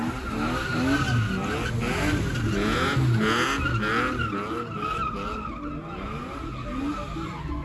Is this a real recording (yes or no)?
yes